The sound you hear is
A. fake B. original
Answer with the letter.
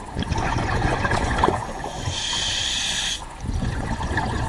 A